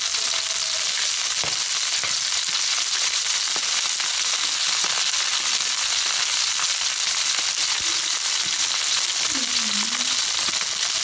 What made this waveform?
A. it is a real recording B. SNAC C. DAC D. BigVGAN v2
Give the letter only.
A